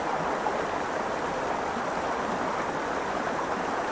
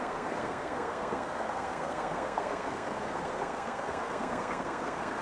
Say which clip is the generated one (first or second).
second